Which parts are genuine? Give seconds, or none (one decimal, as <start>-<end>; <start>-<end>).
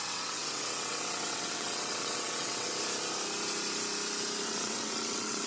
2.7-4.4